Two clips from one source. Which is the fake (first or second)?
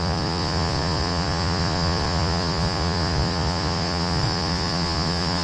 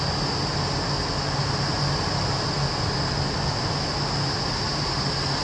first